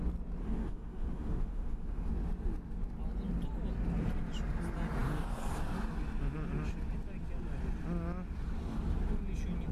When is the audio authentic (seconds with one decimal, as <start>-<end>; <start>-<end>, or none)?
0.0-0.4; 2.1-9.7